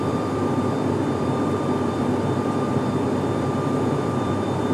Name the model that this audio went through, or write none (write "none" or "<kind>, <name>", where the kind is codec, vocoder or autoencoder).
vocoder, BigVGAN v2